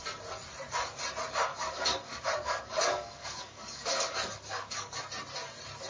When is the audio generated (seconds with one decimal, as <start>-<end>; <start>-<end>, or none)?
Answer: 1.5-5.0